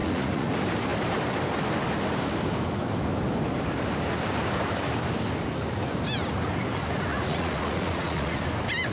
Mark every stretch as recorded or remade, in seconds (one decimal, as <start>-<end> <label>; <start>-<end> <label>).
0.0-0.5 remade; 0.5-7.1 recorded; 7.1-8.4 remade; 8.4-8.9 recorded